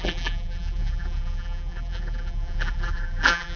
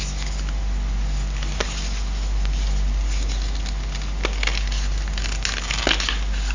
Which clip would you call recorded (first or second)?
second